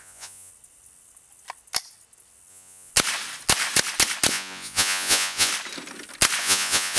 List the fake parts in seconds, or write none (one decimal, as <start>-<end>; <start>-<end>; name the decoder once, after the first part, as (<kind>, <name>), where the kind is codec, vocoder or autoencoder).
0.0-0.5 (vocoder, Vocos); 2.5-2.9; 4.3-5.5; 6.4-7.0